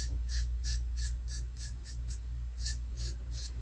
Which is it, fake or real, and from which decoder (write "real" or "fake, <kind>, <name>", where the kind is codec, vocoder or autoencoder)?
fake, codec, DAC